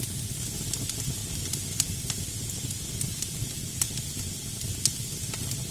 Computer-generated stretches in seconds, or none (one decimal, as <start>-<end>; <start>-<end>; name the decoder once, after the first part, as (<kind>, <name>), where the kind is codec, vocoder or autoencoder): none